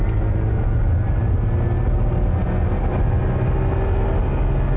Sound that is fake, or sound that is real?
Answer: real